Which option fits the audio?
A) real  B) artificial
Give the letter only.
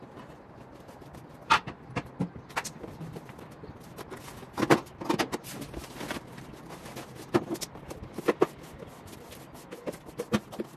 A